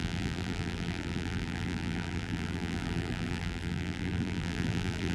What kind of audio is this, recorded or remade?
remade